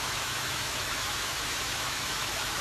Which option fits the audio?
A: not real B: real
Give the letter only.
A